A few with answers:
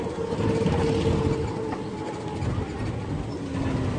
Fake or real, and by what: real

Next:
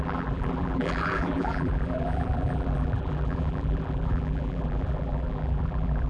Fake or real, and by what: fake, vocoder, BigVGAN v2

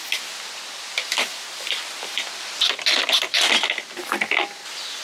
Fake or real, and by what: real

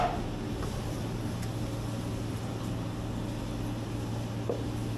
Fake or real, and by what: real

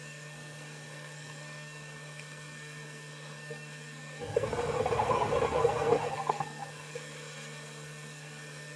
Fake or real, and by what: fake, codec, SNAC